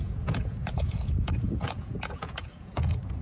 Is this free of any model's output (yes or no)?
no